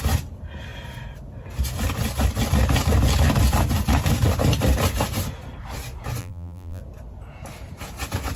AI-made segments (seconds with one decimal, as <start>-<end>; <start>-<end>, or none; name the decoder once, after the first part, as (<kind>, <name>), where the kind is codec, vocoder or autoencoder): 6.2-6.8 (vocoder, BigVGAN v2)

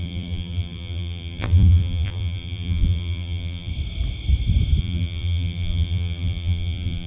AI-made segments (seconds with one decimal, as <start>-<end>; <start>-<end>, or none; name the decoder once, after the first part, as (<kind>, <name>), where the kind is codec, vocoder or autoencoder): 0.0-3.7 (vocoder, BigVGAN v2); 4.8-7.1

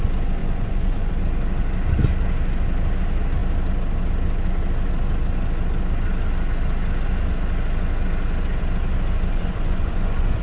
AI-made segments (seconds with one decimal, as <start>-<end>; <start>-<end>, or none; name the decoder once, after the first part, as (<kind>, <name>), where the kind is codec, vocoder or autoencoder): 0.4-1.1 (vocoder, Vocos); 9.3-10.4

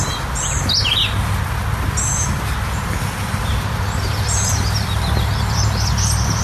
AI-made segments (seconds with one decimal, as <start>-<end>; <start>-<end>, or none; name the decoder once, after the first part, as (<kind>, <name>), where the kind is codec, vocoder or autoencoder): none

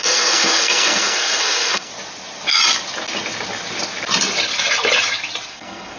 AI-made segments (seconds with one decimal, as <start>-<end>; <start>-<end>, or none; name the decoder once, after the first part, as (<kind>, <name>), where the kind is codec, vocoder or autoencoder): 0.0-1.9 (codec, SNAC); 5.5-6.0